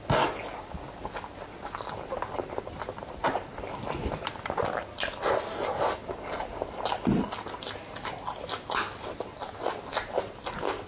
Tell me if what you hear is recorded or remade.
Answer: recorded